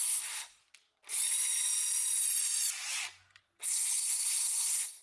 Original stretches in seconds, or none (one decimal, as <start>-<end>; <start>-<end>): 0.6-3.6